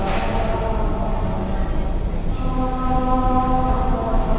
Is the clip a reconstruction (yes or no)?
no